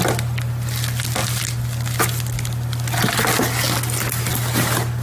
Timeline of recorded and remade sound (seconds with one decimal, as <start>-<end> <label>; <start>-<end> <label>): 0.0-5.0 recorded